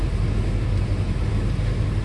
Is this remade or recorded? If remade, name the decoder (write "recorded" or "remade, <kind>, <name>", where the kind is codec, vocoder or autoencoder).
recorded